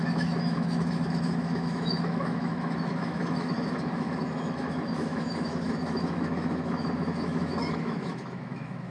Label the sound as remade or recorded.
remade